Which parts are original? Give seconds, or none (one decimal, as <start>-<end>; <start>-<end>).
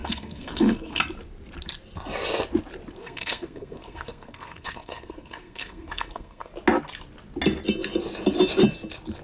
1.0-3.0; 6.5-9.2